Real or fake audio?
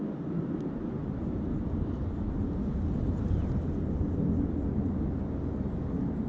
real